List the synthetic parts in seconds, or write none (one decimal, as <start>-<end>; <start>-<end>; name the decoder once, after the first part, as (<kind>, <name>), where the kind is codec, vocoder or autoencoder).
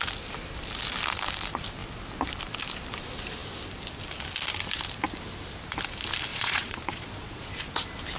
6.3-7.5 (vocoder, Vocos)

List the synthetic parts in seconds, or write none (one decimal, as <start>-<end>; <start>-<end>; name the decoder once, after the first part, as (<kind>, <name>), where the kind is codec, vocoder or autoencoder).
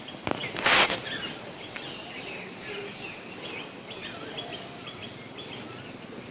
none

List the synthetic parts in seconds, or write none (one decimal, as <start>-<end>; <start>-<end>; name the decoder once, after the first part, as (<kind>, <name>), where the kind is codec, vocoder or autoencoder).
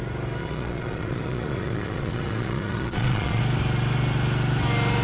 0.4-3.4 (vocoder, Vocos)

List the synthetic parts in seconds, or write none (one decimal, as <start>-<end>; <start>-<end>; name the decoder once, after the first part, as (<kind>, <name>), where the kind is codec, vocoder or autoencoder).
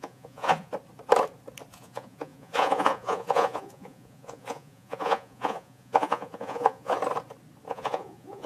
0.0-0.7 (vocoder, Vocos); 1.7-7.0; 7.7-8.5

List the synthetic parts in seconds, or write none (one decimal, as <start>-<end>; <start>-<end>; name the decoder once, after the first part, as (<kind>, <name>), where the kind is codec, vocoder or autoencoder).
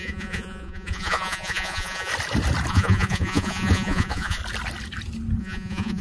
0.0-2.1 (vocoder, Vocos); 2.7-4.4; 5.4-6.0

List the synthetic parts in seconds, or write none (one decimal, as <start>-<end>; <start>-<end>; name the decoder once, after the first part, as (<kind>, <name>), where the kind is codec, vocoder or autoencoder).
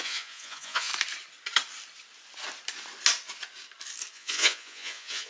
0.0-0.9 (vocoder, Vocos); 4.1-5.3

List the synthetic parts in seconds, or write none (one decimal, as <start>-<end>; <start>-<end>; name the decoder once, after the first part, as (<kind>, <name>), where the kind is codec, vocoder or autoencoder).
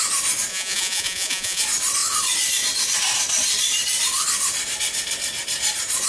0.5-1.6 (vocoder, Vocos)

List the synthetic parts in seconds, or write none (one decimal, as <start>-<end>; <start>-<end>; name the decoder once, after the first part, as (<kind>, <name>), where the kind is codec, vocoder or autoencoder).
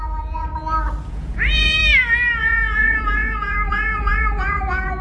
0.0-0.5 (vocoder, Vocos); 1.1-1.8; 2.4-5.0